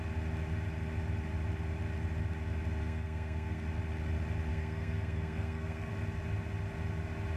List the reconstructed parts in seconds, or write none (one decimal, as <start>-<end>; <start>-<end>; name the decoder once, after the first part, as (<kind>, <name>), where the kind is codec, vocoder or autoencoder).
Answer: 2.8-3.6 (codec, SNAC); 4.5-5.9